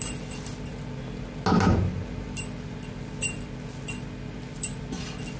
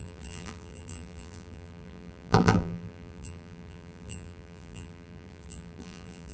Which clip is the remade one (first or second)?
second